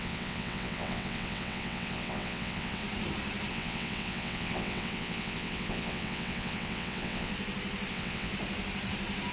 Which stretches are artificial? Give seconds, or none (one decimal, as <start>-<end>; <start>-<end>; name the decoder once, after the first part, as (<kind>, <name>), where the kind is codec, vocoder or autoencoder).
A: 0.0-2.8 (vocoder, WaveNeXt); 3.5-7.3; 7.9-8.3